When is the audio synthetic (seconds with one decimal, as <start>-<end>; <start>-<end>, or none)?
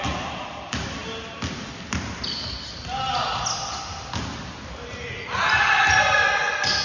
none